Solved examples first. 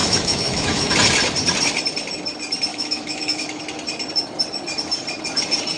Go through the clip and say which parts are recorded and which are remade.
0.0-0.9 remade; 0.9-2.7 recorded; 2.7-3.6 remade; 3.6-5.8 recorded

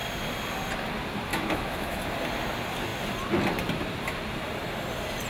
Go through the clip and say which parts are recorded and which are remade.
0.0-1.3 recorded; 1.3-2.0 remade; 2.0-5.3 recorded

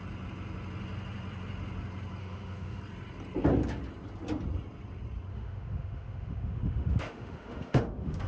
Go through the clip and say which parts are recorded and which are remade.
0.0-2.2 recorded; 2.2-2.8 remade; 2.8-5.3 recorded; 5.3-8.3 remade

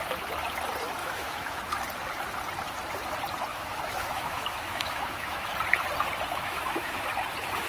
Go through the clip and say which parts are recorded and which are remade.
0.0-1.0 recorded; 1.0-1.6 remade; 1.6-3.5 recorded; 3.5-5.5 remade; 5.5-6.3 recorded; 6.3-7.1 remade; 7.1-7.7 recorded

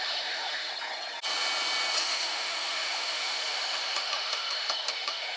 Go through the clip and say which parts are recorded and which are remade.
0.0-0.7 remade; 0.7-2.0 recorded; 2.0-5.4 remade